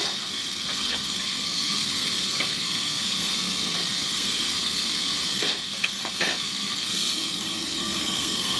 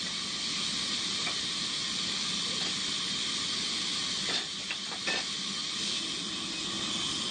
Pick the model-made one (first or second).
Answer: first